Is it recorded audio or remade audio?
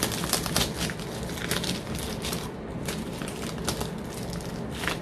recorded